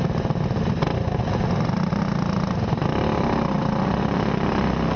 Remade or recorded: recorded